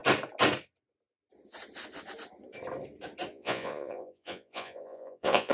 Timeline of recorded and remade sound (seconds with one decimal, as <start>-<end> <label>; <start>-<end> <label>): 0.0-3.3 recorded; 3.3-5.5 remade